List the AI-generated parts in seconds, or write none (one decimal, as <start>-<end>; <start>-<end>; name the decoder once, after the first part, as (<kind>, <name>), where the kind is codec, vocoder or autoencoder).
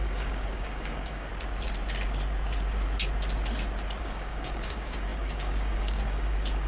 0.0-1.3 (codec, DAC); 4.0-6.7